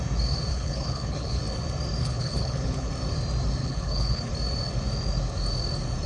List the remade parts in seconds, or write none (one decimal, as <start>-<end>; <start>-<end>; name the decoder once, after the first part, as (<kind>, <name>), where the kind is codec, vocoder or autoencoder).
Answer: 0.5-1.4 (codec, HILCodec); 2.0-2.9; 3.6-4.3